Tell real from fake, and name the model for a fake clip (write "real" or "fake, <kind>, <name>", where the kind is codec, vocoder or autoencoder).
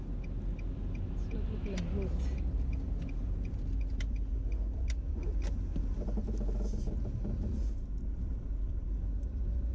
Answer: real